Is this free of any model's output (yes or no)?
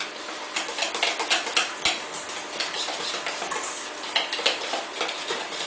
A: yes